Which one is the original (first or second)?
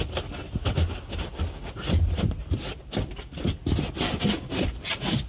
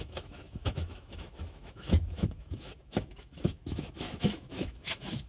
first